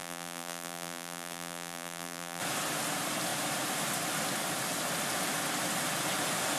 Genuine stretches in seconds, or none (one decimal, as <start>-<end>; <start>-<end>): 2.4-6.6